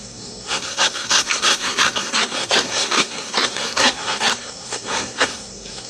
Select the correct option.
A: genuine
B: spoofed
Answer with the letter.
B